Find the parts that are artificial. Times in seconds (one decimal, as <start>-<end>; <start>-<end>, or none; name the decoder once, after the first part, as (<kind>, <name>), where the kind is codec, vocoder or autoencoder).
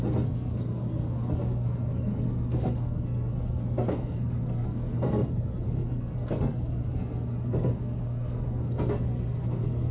0.0-9.9 (codec, SNAC)